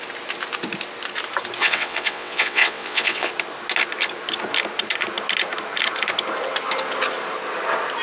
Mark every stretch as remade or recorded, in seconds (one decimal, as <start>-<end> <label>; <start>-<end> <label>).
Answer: 0.0-1.6 recorded; 1.6-3.3 remade; 3.3-8.0 recorded